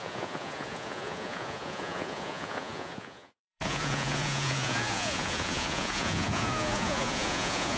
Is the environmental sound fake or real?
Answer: fake